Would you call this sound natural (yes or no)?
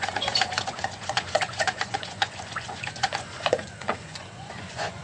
no